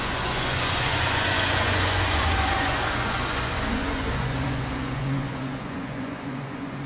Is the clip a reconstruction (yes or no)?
yes